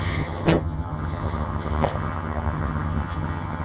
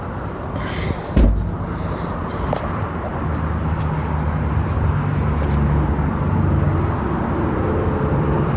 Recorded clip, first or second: second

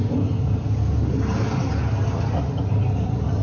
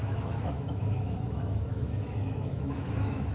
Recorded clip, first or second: first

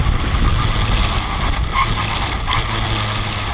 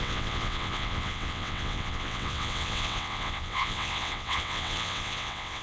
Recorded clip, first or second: first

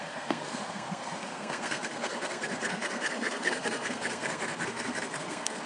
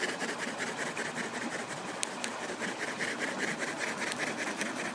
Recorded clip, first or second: second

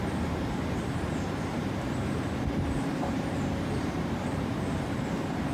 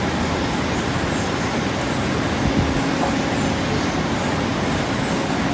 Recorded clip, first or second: second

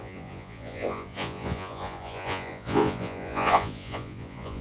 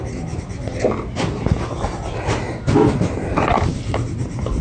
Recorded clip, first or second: second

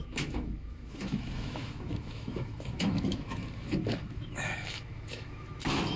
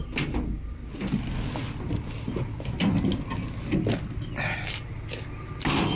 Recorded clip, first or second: second